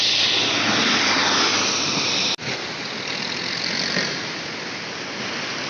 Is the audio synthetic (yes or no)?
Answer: no